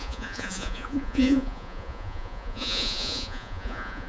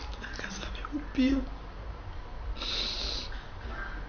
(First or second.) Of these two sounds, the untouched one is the second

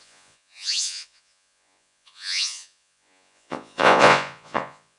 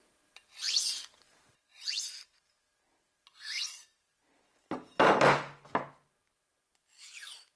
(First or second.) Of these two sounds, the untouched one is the second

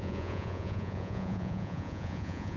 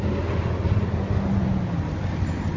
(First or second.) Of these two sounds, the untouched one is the second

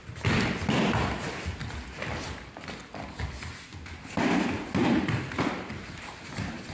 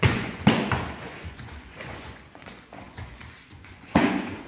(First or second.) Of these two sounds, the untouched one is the first